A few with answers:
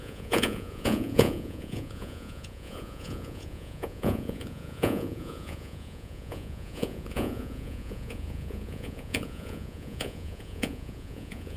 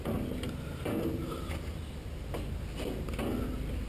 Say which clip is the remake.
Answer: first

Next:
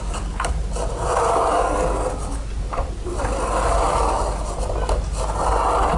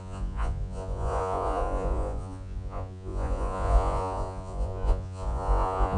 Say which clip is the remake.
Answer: second